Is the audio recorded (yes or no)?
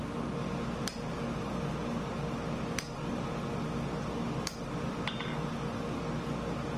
yes